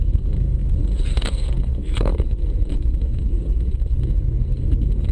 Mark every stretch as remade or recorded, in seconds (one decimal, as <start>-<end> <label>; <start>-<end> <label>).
0.0-5.1 remade